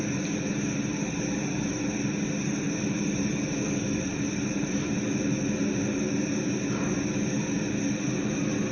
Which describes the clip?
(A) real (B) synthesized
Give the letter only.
A